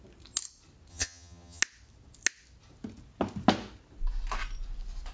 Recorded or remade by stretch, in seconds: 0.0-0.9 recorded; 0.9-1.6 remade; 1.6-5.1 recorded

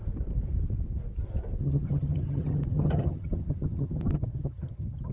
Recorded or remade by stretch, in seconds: 0.0-1.6 recorded; 1.6-5.1 remade